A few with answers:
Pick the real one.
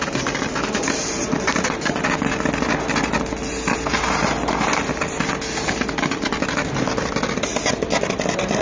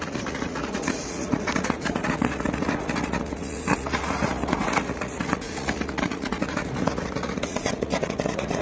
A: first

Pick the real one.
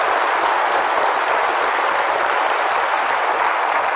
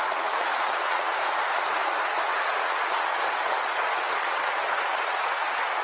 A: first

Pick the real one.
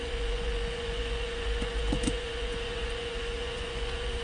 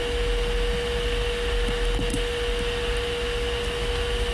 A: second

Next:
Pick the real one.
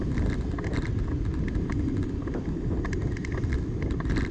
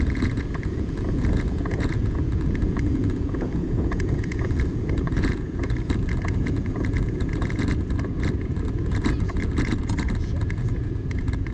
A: first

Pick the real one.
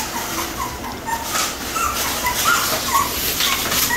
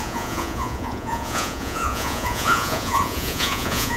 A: first